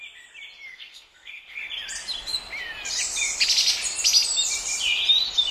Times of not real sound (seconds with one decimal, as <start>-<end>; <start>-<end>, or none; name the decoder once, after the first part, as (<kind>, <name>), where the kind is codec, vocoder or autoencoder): 0.7-1.6 (codec, SNAC)